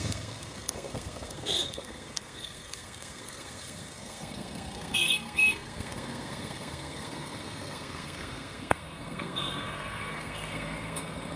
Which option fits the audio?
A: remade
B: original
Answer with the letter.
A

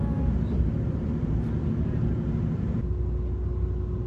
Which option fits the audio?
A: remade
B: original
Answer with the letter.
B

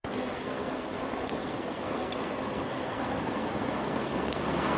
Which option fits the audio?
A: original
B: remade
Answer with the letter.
B